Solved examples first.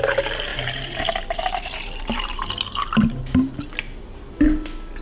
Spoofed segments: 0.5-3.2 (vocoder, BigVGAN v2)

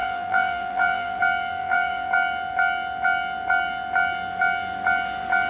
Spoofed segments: 0.0-1.2 (vocoder, BigVGAN v2); 1.6-2.1